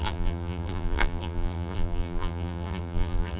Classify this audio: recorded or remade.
remade